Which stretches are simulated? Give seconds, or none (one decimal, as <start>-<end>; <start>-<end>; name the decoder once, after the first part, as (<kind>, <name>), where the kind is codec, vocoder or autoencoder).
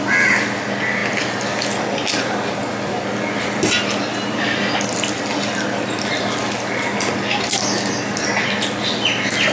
none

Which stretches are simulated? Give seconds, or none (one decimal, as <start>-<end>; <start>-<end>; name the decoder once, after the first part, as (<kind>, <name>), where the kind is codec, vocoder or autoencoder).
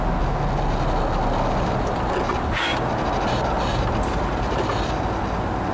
2.7-4.6 (vocoder, BigVGAN v2)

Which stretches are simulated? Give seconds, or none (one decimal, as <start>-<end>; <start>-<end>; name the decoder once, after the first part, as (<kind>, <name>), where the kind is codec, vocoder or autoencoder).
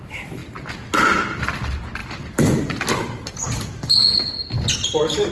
2.0-5.3 (vocoder, BigVGAN v2)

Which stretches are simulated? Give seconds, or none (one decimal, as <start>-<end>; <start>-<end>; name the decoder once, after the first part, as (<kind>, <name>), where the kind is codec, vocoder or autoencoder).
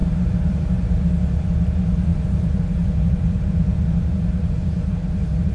0.0-1.1 (vocoder, BigVGAN v2); 2.1-5.5